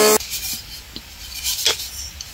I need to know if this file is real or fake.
real